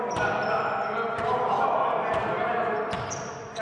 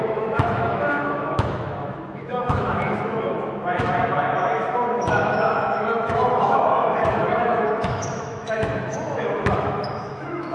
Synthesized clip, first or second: second